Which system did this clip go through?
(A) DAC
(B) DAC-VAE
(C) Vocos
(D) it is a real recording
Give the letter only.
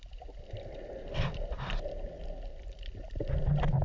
D